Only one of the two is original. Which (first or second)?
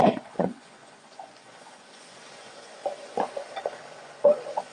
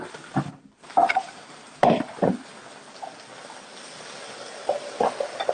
second